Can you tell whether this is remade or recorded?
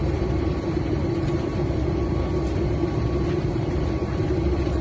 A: remade